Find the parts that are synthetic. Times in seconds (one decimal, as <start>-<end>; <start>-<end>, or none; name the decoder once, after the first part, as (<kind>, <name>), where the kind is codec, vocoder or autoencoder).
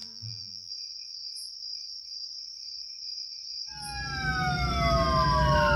0.0-0.7 (vocoder, BigVGAN v2)